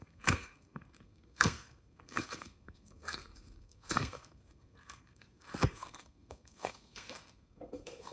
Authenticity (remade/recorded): remade